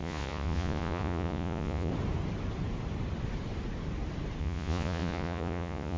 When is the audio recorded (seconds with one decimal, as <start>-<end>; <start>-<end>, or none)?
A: 1.9-4.4